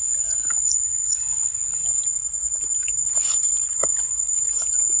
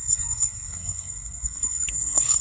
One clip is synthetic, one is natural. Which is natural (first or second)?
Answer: first